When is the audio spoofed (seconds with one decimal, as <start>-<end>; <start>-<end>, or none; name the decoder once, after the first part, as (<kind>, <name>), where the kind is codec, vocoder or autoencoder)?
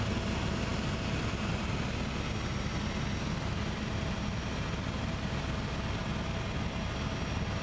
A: none